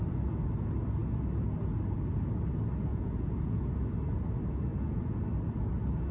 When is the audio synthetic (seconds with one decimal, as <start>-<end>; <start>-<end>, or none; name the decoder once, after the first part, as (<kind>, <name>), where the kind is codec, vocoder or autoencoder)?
2.9-3.7 (vocoder, Vocos); 4.7-5.2